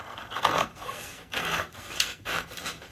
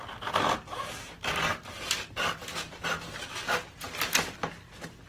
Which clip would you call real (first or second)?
second